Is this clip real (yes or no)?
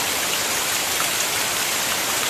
yes